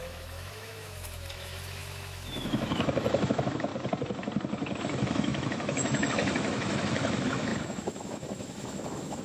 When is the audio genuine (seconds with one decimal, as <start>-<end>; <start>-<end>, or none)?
3.7-4.8